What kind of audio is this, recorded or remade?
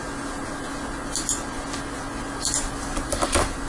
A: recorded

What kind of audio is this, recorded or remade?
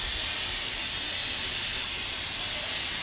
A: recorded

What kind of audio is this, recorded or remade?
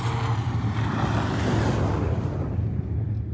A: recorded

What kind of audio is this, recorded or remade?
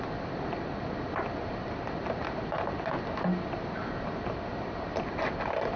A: recorded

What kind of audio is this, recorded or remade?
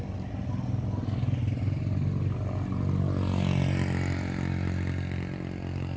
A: recorded